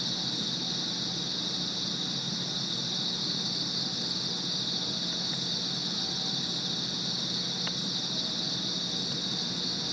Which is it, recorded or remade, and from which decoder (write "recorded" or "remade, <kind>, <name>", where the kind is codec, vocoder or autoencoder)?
recorded